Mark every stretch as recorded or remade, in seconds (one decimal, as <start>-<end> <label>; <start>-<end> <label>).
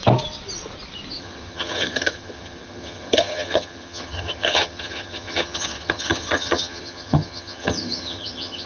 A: 0.0-1.2 recorded; 1.2-8.7 remade